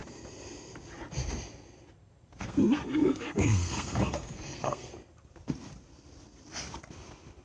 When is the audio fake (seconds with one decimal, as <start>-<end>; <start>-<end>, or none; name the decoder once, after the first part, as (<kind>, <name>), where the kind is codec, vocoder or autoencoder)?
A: 2.4-4.9 (codec, SNAC)